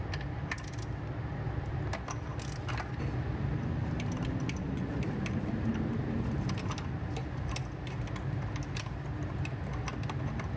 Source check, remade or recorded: recorded